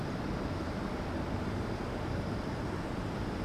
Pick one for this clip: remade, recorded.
remade